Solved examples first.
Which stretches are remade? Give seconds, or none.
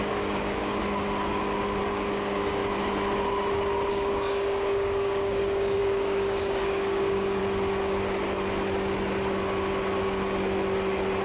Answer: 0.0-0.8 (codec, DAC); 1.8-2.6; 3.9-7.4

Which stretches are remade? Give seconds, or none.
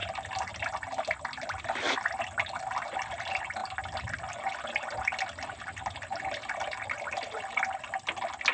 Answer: none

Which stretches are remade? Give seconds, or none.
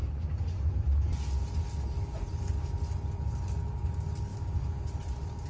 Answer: 4.3-5.5 (vocoder, BigVGAN v2)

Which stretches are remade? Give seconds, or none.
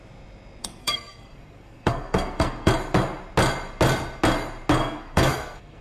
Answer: 0.6-2.7 (codec, SNAC); 4.8-5.8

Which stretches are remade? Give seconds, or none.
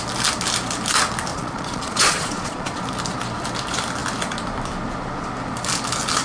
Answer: 1.3-2.8 (vocoder, Vocos)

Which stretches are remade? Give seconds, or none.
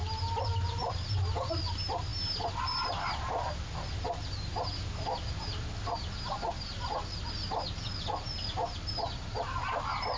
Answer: none